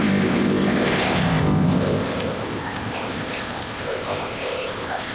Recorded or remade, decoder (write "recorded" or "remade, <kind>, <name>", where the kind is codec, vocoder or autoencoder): remade, codec, ZipCodec